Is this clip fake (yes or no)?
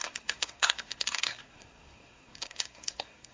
yes